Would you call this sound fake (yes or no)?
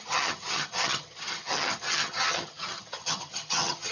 yes